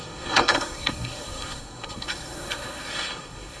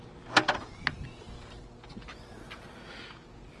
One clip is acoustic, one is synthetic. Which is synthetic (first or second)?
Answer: first